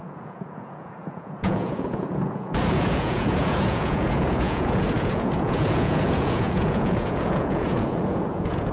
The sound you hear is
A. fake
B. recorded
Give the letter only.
A